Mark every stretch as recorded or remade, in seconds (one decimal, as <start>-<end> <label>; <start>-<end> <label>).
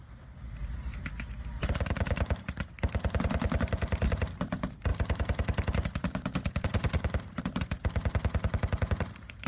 0.0-9.5 remade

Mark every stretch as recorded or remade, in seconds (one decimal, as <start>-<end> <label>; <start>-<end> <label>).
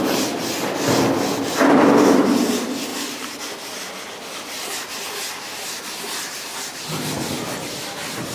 0.0-8.3 recorded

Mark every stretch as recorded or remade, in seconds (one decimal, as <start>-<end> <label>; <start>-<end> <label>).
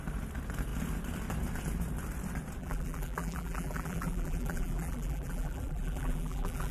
0.0-2.6 recorded; 2.6-6.7 remade